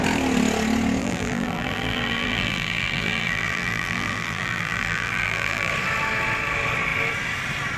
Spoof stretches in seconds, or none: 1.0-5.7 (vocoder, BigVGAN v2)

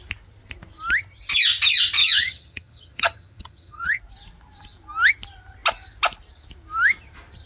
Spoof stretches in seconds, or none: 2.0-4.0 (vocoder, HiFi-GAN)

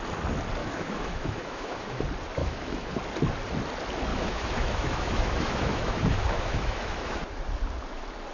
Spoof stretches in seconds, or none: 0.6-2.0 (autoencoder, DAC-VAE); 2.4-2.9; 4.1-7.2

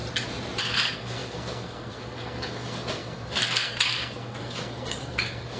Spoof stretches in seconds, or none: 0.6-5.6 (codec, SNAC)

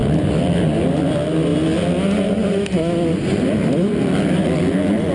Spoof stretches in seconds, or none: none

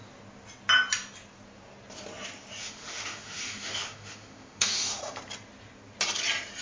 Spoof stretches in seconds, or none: 2.6-5.0 (autoencoder, DAC-VAE)

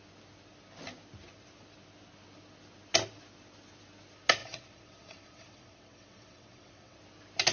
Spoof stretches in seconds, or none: 4.4-7.0 (vocoder, WaveNeXt)